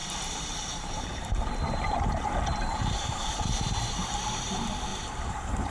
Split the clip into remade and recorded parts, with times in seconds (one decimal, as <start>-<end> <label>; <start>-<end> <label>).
0.0-3.3 remade; 3.3-4.9 recorded; 4.9-5.7 remade